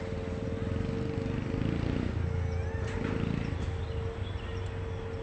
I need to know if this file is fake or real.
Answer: real